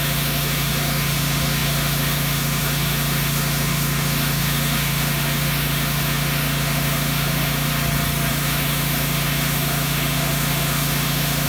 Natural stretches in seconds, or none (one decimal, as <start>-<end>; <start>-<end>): 7.7-8.3